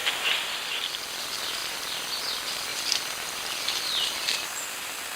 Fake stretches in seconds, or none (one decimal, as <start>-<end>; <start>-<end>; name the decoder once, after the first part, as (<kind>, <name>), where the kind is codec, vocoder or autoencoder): 1.6-2.2 (vocoder, BigVGAN v2)

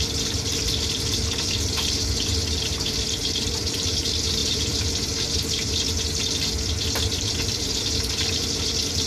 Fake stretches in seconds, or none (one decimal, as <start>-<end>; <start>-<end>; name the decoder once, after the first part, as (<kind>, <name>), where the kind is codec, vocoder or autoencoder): 0.0-9.1 (vocoder, BigVGAN v2)